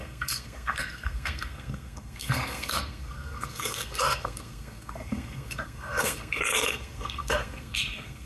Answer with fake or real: fake